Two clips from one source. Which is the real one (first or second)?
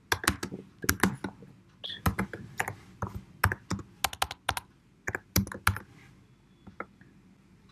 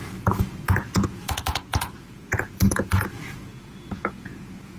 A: first